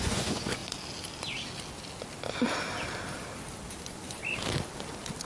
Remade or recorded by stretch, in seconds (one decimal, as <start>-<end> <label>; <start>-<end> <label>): 0.0-0.6 remade; 0.6-3.8 recorded; 3.8-4.2 remade; 4.2-5.3 recorded